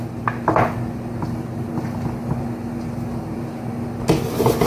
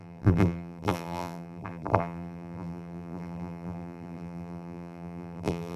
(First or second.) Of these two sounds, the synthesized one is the second